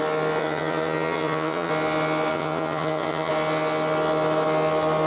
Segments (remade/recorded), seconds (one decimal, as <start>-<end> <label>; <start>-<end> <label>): 0.0-0.4 recorded; 0.4-1.7 remade; 1.7-2.3 recorded; 2.3-3.3 remade; 3.3-5.1 recorded